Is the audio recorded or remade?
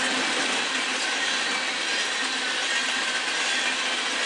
recorded